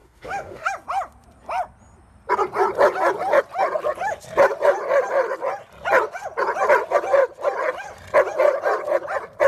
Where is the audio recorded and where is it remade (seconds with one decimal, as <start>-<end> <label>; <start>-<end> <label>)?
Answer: 0.0-0.7 remade; 0.7-9.5 recorded